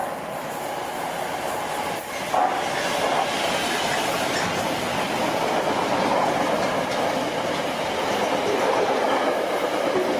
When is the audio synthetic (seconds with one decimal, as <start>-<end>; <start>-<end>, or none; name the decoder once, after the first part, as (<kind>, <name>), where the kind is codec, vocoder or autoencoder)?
none